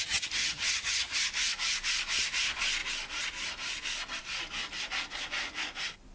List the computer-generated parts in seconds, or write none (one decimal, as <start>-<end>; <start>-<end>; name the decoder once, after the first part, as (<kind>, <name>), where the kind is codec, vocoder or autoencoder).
0.0-1.2 (vocoder, HiFi-GAN)